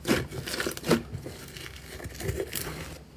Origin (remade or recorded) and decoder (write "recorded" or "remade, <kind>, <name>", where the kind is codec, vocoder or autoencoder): recorded